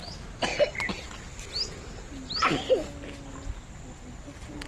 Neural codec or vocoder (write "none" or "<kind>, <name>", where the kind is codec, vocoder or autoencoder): none